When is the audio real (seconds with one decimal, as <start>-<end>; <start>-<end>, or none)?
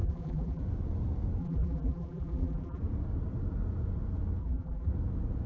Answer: 0.6-1.4; 2.8-4.4; 4.9-5.5